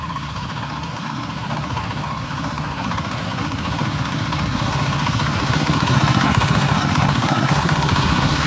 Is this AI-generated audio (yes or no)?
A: yes